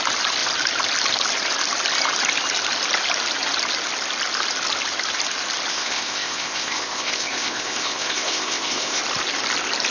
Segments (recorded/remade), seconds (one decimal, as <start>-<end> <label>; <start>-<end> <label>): 0.0-5.7 recorded; 5.7-9.0 remade; 9.0-9.9 recorded